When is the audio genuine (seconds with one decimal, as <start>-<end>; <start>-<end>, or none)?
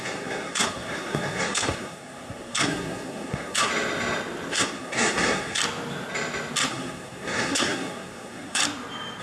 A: 3.7-4.5; 5.6-6.7; 8.6-9.2